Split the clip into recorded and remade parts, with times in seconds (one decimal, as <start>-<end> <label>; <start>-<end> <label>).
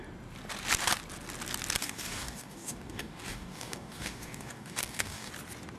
0.0-1.8 recorded; 1.8-5.3 remade; 5.3-5.8 recorded